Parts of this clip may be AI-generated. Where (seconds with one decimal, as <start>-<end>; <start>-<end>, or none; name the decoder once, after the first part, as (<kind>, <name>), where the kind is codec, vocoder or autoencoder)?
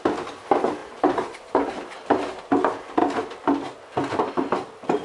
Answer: 0.8-2.4 (vocoder, BigVGAN v2)